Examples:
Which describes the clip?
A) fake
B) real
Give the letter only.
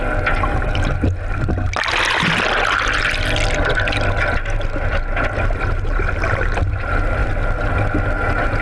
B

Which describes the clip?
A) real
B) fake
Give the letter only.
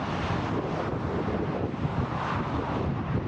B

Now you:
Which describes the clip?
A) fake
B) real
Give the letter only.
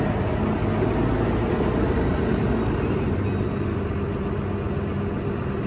B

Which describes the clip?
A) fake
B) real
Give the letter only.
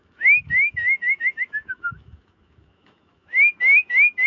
A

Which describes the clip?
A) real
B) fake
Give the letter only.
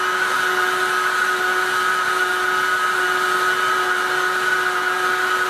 A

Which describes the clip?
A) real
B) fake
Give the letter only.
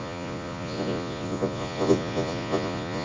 B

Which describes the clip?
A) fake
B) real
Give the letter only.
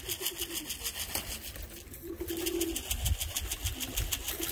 B